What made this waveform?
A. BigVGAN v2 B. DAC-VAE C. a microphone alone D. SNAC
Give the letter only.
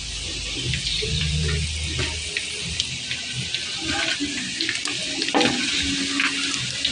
A